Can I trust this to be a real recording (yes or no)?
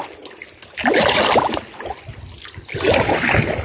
yes